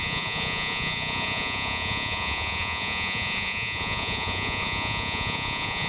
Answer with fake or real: fake